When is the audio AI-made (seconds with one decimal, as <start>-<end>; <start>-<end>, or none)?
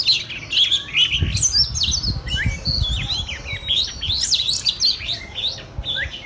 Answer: 3.6-5.2